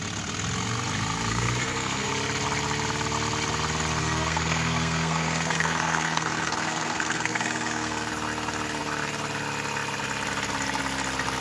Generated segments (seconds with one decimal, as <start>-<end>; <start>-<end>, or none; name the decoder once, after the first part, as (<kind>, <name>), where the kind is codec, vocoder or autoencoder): 1.3-2.1 (codec, SNAC); 4.0-8.1